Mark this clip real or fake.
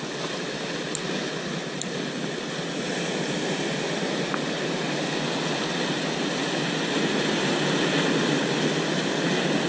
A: real